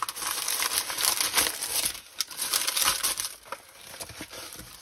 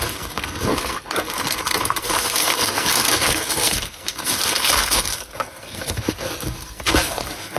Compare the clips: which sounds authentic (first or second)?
first